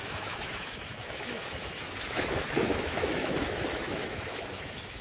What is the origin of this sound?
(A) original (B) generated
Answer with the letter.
B